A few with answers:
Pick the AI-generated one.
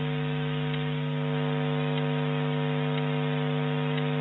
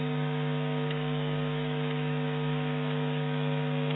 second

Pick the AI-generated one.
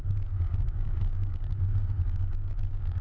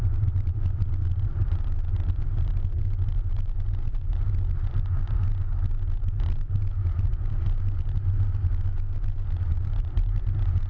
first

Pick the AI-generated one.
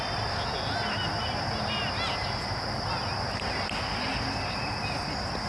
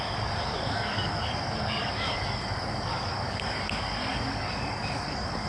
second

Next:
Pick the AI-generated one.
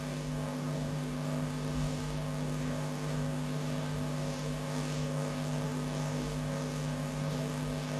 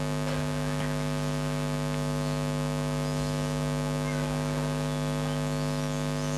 first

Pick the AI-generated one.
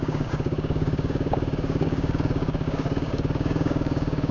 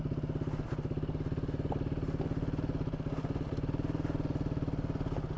first